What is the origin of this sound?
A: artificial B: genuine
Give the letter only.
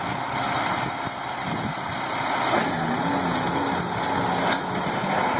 B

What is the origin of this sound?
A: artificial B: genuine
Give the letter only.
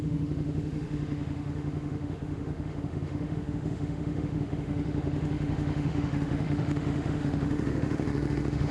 A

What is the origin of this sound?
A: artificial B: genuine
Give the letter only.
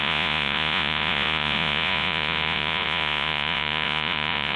A